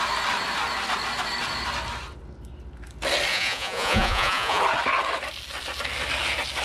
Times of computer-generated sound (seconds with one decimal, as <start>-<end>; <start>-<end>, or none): 3.3-4.6